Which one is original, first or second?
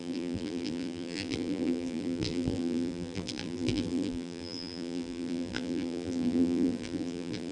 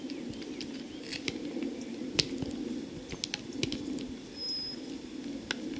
second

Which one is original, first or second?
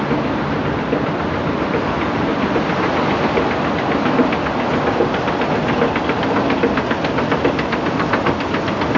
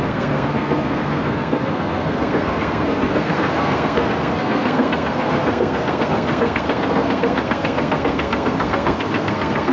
first